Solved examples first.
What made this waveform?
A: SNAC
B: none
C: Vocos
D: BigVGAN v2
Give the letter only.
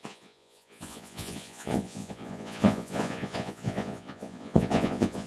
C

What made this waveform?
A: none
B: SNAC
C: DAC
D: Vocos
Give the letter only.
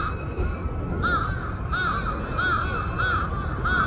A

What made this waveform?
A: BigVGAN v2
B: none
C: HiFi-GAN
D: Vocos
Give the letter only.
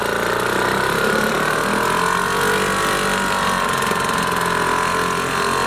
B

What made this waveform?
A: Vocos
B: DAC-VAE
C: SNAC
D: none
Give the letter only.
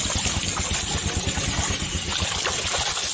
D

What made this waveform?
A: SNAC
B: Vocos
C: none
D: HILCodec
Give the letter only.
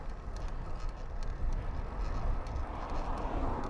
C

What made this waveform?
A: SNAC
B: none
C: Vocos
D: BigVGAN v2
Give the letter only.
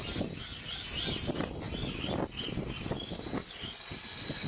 B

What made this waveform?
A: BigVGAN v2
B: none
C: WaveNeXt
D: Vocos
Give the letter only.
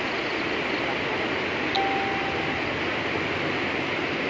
B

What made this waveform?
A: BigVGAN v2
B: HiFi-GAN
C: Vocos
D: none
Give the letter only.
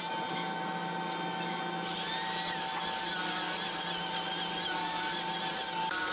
D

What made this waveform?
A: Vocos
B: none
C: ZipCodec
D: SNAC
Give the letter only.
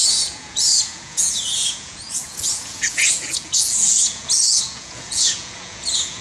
A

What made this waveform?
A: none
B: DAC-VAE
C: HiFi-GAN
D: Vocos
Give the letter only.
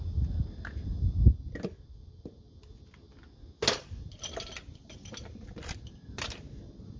A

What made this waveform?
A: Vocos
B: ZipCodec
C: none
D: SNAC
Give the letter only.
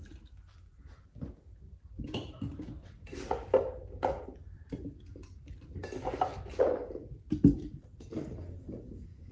C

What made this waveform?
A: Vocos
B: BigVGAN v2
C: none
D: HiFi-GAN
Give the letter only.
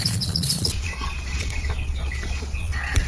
A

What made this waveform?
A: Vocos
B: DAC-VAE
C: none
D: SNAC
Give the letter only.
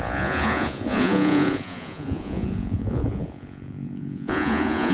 A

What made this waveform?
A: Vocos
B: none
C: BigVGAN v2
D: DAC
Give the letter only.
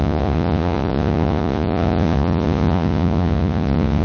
A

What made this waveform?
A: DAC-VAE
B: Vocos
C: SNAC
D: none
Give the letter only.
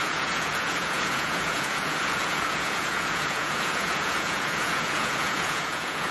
B